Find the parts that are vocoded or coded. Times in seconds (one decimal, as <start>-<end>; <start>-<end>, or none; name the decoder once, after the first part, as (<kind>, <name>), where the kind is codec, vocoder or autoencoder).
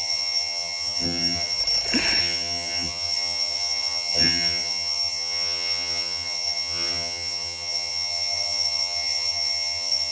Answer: 0.0-1.6 (vocoder, HiFi-GAN); 2.2-10.1